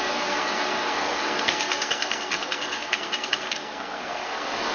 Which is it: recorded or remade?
remade